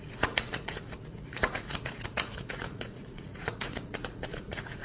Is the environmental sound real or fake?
fake